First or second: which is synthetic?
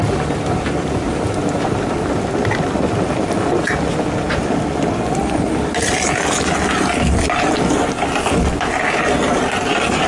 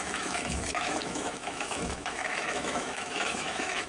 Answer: second